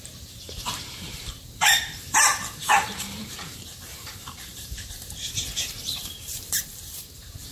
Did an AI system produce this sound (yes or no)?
yes